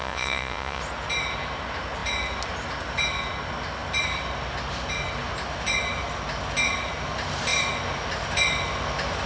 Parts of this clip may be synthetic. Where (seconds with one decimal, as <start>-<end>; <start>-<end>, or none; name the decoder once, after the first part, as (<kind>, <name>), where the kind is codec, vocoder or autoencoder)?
0.0-0.8 (vocoder, Vocos)